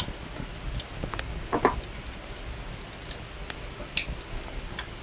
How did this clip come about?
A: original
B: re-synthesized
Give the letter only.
A